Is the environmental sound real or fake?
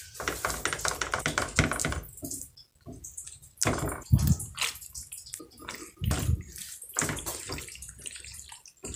real